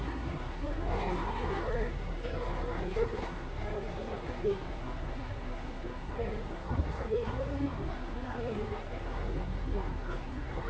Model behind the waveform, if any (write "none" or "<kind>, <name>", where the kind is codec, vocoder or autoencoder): codec, SNAC